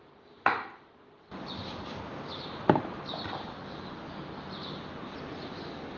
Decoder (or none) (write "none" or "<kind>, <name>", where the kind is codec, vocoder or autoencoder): none